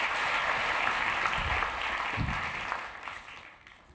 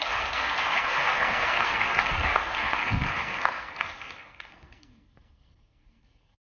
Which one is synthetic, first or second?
second